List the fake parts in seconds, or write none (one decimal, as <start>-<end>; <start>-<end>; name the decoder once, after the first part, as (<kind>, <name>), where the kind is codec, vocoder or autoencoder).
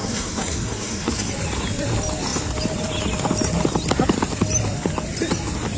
0.0-1.3 (codec, SNAC)